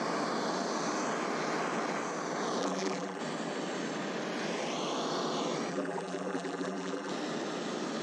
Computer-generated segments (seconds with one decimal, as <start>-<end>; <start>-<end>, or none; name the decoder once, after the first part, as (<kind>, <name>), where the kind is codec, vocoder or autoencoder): 2.6-3.2 (vocoder, BigVGAN v2); 5.7-7.1